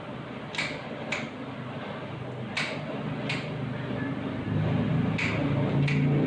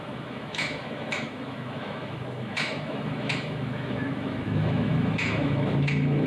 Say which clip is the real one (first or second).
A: first